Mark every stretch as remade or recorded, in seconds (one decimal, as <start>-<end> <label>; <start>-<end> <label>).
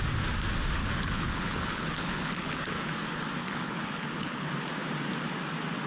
0.0-0.8 recorded; 0.8-2.9 remade; 2.9-3.4 recorded; 3.4-4.5 remade; 4.5-5.9 recorded